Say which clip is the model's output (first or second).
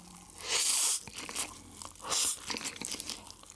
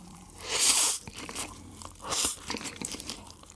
second